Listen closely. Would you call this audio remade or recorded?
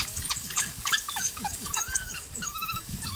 remade